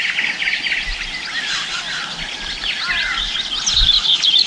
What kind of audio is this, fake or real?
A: real